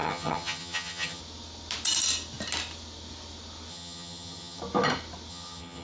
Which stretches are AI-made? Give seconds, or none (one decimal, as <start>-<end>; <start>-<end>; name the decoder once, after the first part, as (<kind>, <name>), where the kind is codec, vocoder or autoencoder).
0.0-1.2 (vocoder, HiFi-GAN); 3.7-4.6; 5.3-5.8